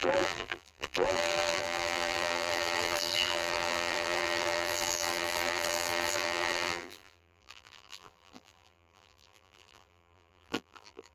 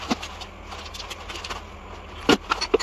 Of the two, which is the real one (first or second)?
second